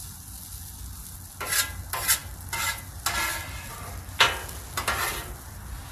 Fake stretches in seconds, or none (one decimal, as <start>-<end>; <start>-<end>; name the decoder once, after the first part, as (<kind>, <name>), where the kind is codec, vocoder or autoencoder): none